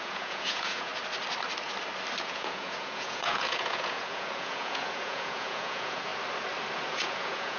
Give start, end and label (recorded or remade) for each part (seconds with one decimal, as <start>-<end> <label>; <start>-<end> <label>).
0.0-0.9 remade; 0.9-2.2 recorded; 2.2-6.1 remade; 6.1-6.9 recorded; 6.9-7.6 remade